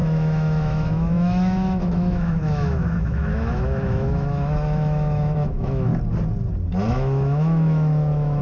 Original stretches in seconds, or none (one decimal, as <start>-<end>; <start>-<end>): 5.9-6.9